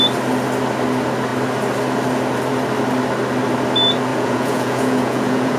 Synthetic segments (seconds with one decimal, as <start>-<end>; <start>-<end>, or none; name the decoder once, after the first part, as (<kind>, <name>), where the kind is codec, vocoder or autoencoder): 4.1-5.6 (vocoder, Vocos)